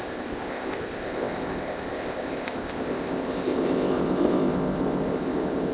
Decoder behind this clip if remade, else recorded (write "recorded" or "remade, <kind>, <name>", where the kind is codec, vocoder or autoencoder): remade, codec, ZipCodec